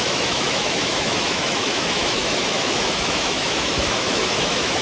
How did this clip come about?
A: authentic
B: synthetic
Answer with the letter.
B